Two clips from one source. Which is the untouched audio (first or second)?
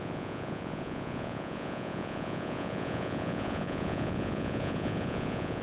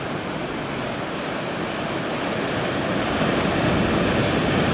second